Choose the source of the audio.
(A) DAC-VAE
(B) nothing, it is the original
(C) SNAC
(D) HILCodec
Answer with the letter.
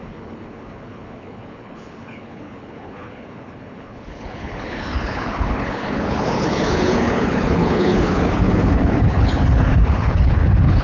D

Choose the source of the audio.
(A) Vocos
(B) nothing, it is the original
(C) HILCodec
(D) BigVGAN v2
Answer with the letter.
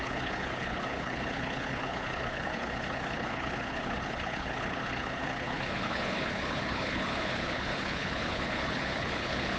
C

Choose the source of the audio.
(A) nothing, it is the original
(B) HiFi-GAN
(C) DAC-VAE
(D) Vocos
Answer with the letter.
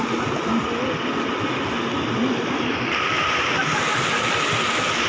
A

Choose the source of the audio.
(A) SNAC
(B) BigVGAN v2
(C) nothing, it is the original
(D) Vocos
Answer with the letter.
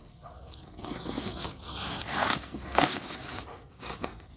A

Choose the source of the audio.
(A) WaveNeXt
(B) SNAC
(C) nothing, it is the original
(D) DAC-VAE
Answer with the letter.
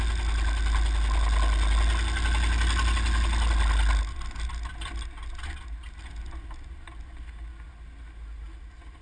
C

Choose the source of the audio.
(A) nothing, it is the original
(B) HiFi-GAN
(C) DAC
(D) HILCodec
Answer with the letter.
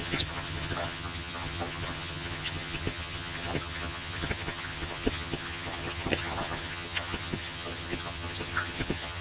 B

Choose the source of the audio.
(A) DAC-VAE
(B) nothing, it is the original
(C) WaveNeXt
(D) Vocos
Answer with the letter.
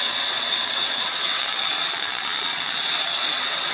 C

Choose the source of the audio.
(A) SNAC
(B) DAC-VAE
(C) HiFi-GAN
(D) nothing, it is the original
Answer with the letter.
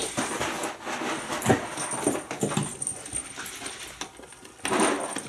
D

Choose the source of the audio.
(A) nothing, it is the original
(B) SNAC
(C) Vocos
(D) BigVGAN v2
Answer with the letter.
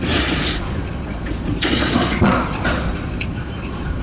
C